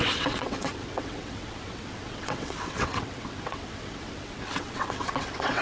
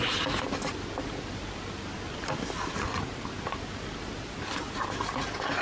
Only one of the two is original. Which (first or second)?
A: second